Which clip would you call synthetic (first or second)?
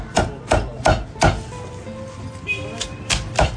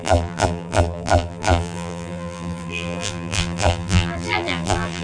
second